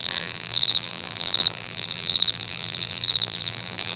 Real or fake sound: fake